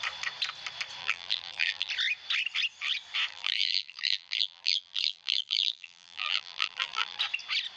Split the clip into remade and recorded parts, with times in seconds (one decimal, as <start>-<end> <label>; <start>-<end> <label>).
0.0-1.0 recorded; 1.0-1.9 remade; 1.9-3.3 recorded; 3.3-7.2 remade; 7.2-7.8 recorded